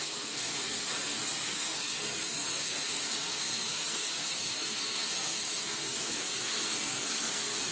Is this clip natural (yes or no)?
no